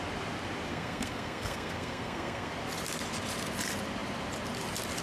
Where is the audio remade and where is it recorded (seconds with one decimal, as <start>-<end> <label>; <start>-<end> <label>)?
0.0-0.7 recorded; 0.7-2.5 remade; 2.5-5.0 recorded